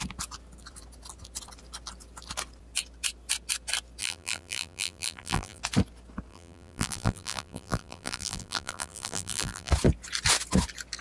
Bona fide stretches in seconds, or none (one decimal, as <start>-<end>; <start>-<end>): 0.0-4.0; 5.6-6.3; 9.7-11.0